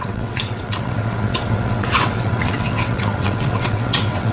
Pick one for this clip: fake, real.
fake